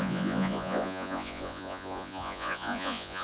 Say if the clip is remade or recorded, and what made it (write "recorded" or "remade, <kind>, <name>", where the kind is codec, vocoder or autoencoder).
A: remade, vocoder, Vocos